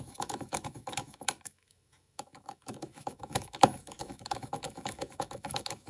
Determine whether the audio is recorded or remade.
remade